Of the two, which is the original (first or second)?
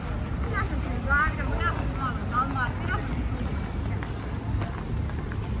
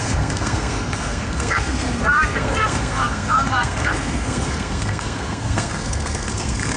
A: first